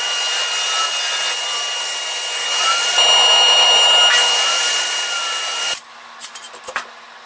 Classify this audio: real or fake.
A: real